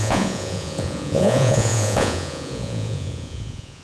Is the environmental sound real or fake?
fake